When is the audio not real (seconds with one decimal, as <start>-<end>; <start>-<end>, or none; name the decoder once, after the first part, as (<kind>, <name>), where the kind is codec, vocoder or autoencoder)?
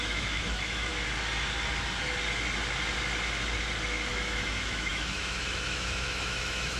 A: 0.0-0.9 (autoencoder, DAC-VAE); 4.1-6.8